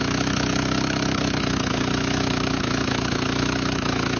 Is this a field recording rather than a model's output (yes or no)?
no